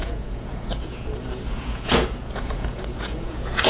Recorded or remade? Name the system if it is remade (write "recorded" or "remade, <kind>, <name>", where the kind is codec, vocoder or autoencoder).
remade, vocoder, Vocos